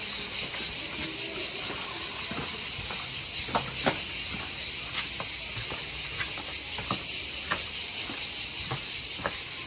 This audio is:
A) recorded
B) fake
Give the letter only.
A